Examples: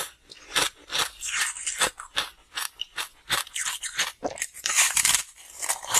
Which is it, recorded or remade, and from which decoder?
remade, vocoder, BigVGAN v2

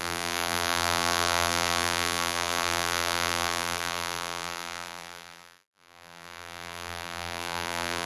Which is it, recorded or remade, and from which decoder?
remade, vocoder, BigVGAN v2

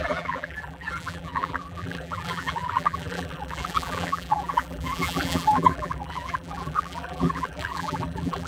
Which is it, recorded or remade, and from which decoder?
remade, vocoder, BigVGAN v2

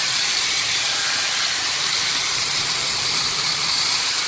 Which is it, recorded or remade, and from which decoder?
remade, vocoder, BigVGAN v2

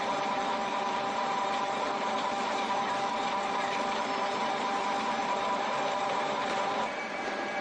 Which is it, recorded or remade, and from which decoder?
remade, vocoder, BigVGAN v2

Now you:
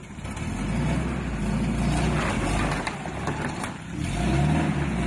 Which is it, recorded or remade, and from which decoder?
recorded